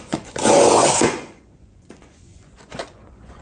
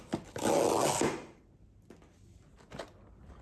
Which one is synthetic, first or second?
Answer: first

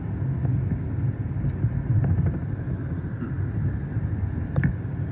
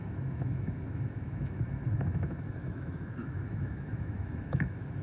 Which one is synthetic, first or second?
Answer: second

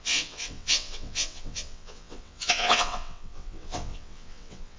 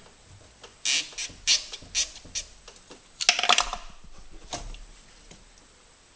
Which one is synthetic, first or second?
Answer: first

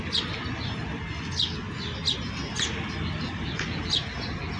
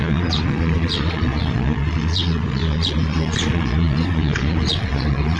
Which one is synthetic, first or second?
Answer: second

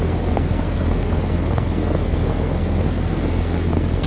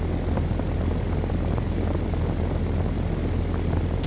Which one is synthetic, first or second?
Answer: first